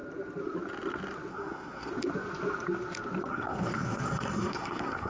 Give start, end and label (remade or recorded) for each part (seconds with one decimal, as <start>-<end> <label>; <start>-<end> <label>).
0.0-1.3 recorded; 1.3-1.9 remade; 1.9-3.3 recorded; 3.3-5.1 remade